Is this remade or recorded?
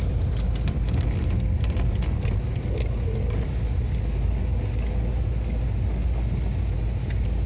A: recorded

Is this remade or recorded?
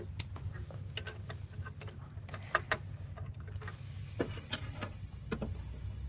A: recorded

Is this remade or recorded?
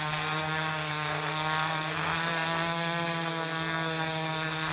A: remade